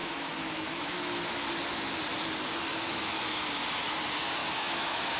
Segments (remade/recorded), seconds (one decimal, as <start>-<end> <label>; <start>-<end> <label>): 0.0-1.5 remade; 1.5-2.7 recorded; 2.7-3.2 remade; 3.2-4.4 recorded; 4.4-5.2 remade